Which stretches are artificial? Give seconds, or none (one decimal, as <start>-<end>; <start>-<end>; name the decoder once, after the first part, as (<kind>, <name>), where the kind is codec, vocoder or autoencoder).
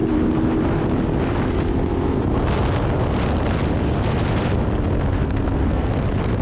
5.1-5.9 (codec, SNAC)